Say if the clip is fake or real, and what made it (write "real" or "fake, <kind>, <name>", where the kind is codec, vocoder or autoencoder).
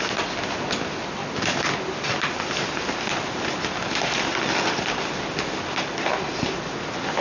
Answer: real